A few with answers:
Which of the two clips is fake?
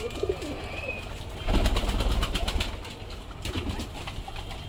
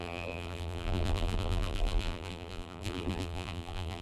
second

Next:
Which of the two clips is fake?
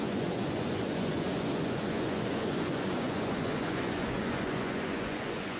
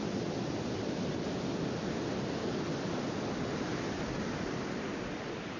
first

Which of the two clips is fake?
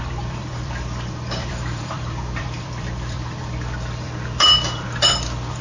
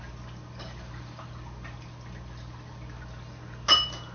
first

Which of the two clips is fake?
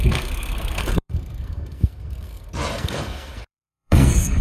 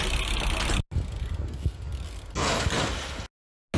first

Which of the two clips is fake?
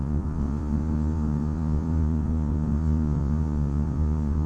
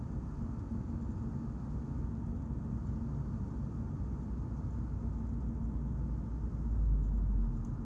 first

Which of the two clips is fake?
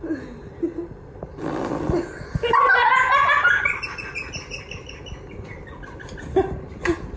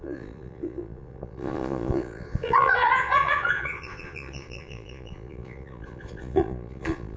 second